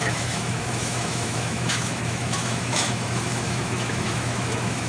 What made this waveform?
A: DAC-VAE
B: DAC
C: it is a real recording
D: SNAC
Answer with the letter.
A